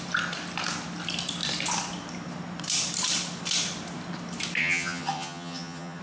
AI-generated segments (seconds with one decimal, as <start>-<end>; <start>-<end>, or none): 4.6-6.0